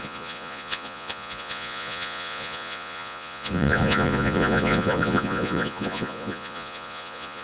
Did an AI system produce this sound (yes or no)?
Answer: yes